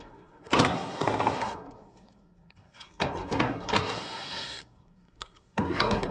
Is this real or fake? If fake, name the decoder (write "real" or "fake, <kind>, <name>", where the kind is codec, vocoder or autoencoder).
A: fake, codec, SNAC